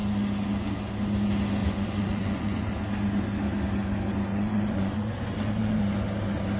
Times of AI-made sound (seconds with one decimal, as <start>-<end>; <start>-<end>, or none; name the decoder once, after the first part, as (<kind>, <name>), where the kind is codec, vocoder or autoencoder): 1.6-2.6 (vocoder, Vocos); 4.3-5.8